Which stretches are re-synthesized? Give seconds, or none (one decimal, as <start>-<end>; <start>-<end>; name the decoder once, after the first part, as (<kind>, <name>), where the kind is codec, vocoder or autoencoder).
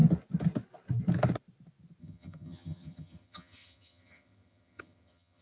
2.0-5.4 (vocoder, HiFi-GAN)